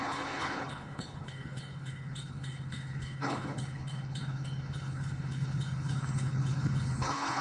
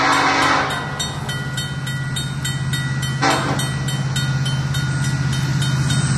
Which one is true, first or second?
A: second